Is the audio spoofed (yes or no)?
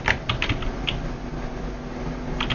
no